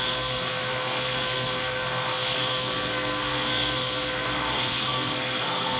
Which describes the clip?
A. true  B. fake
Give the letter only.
B